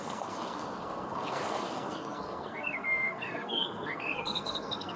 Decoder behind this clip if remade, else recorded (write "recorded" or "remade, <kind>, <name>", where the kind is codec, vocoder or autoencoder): remade, codec, SNAC